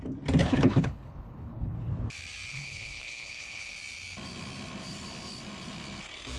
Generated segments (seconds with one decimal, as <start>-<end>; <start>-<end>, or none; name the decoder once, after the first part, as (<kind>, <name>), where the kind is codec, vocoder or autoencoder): 0.4-1.9 (codec, HILCodec); 2.5-3.7